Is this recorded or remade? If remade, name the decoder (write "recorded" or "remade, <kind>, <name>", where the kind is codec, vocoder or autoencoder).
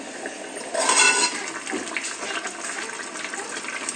recorded